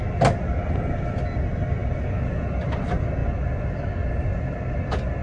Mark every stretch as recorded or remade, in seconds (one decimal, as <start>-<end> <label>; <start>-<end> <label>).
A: 0.0-5.2 recorded